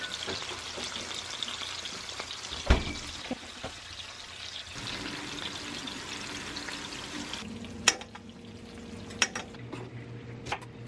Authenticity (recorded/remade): recorded